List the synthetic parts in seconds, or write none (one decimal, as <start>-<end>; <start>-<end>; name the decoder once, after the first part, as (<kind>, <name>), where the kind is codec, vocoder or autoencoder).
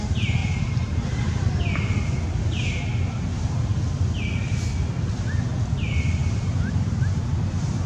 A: 0.4-3.8 (vocoder, BigVGAN v2); 6.2-7.0